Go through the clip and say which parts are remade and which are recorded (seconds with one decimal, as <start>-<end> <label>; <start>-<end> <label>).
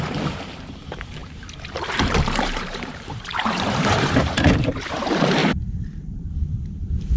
0.0-5.4 remade; 5.4-6.0 recorded; 6.0-7.2 remade